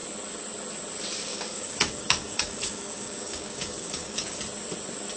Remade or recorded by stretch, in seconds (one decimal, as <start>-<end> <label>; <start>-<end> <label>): 0.0-1.3 recorded; 1.3-4.4 remade; 4.4-5.2 recorded